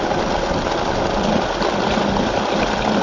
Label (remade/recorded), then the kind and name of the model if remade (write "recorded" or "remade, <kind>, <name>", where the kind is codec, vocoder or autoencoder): recorded